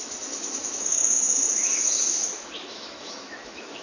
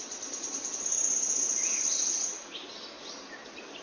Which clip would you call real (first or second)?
second